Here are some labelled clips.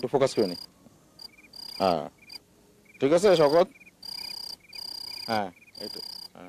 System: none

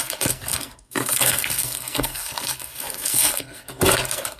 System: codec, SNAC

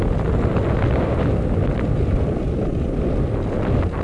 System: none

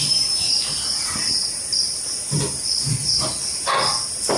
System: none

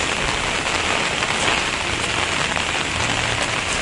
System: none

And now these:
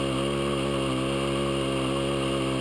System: none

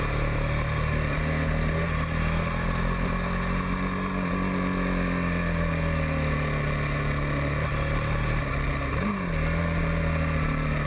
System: none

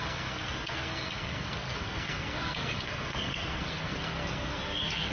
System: codec, SNAC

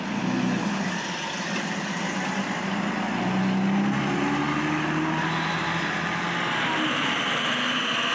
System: none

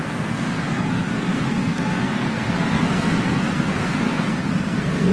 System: codec, SNAC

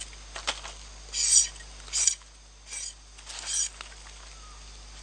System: none